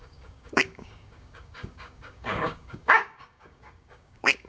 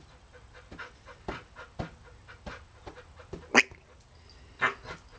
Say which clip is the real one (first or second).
second